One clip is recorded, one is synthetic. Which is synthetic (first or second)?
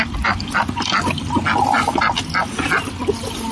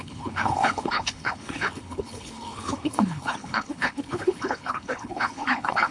second